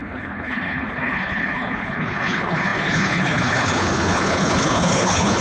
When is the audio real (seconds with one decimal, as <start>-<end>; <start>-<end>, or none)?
none

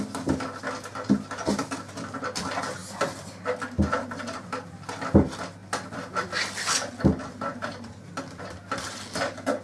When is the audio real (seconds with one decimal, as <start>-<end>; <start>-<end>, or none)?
0.0-9.6

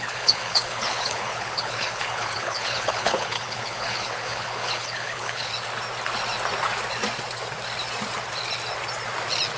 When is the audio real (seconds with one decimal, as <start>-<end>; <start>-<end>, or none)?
5.5-9.6

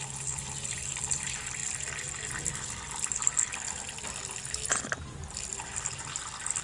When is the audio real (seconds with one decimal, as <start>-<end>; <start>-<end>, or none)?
0.0-6.6

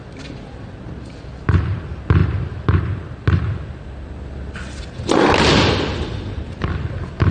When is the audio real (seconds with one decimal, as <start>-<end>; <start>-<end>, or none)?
0.0-7.3

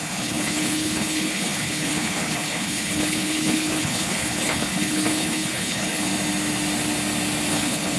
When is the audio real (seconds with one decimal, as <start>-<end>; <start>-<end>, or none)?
6.1-7.5